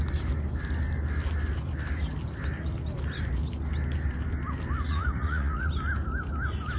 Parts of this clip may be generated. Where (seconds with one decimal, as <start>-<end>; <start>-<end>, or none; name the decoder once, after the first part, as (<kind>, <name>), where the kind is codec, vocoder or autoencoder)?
4.9-5.7 (vocoder, Vocos)